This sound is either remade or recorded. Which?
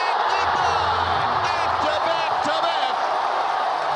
recorded